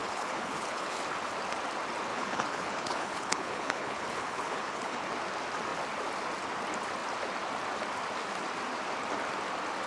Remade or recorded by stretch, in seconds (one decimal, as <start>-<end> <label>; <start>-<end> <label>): 0.0-1.0 remade; 1.0-2.1 recorded; 2.1-5.1 remade; 5.1-9.9 recorded